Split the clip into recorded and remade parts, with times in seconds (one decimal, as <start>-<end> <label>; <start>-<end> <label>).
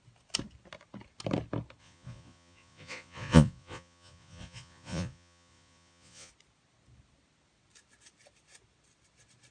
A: 0.0-1.8 recorded; 1.8-6.3 remade; 6.3-9.5 recorded